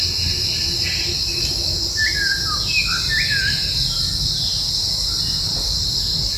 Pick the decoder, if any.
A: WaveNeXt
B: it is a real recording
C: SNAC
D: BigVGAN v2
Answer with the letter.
B